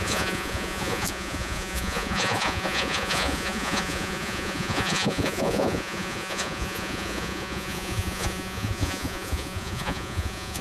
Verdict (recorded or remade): remade